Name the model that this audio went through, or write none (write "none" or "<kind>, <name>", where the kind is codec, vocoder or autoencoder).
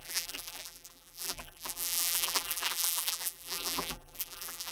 vocoder, BigVGAN v2